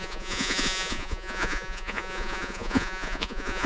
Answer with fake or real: fake